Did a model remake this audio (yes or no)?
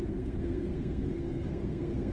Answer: yes